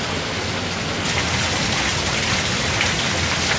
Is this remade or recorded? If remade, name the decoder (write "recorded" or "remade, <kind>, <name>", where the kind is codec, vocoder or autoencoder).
recorded